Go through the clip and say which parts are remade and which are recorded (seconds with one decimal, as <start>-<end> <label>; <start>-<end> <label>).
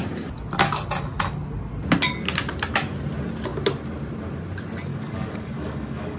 0.0-4.9 recorded; 4.9-6.2 remade